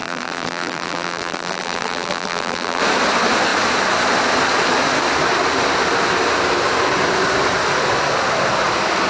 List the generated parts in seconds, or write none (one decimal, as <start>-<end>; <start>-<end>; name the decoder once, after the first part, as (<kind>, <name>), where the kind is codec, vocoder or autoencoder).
0.0-2.8 (vocoder, BigVGAN v2)